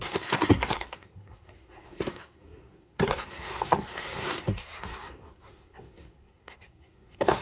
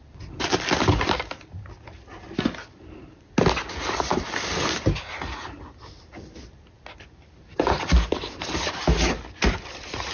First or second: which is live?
second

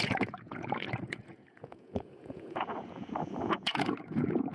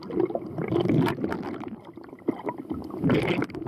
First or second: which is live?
second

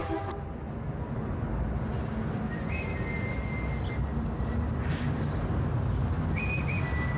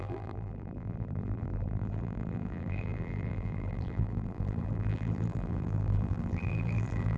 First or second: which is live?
first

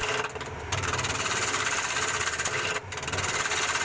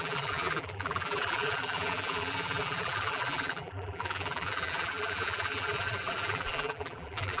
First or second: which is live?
first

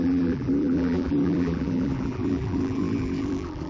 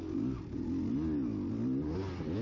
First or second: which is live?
second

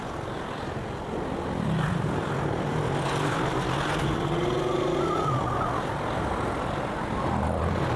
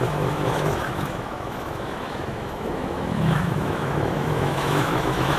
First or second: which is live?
first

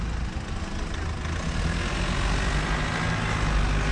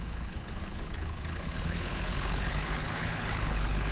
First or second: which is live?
first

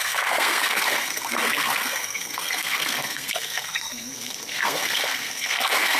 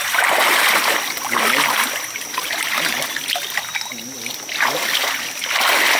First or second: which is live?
second